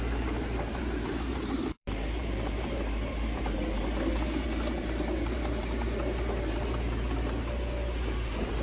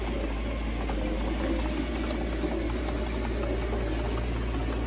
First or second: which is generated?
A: first